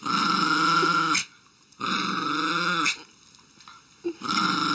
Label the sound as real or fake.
real